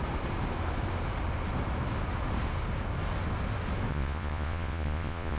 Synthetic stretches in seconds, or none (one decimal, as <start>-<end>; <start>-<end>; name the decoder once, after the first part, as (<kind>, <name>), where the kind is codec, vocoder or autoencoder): 3.9-5.4 (vocoder, Vocos)